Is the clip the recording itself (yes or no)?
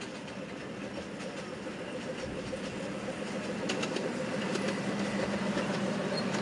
yes